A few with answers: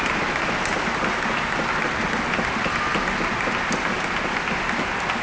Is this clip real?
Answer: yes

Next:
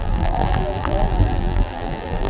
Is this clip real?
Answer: no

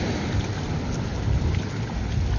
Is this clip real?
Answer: yes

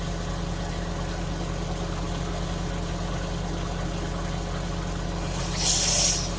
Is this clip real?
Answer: yes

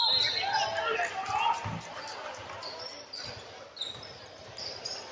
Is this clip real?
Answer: yes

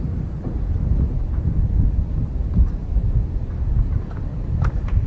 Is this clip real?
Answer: yes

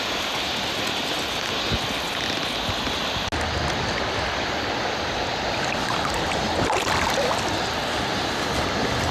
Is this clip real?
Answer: yes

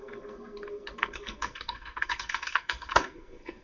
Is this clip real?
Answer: no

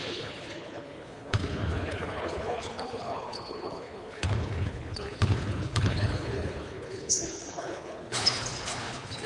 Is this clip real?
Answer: no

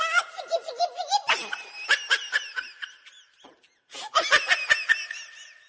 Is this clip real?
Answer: yes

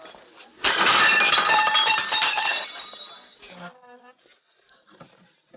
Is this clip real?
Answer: no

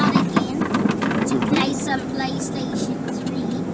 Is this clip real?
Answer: yes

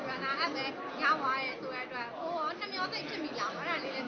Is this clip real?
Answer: yes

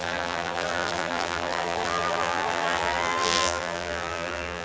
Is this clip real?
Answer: no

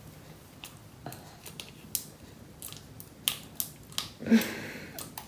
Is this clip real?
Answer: yes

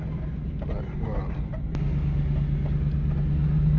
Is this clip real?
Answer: yes